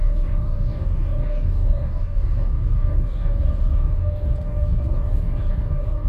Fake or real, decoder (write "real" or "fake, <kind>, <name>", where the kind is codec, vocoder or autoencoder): fake, codec, DAC